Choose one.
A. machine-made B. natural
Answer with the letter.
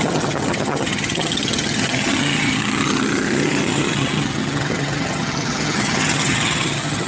A